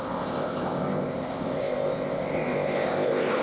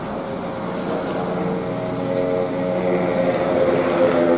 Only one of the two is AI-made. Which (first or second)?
first